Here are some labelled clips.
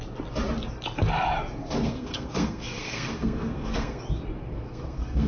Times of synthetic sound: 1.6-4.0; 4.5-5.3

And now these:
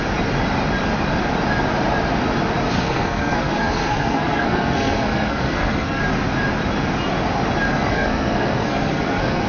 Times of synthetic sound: 2.8-6.0; 7.9-9.5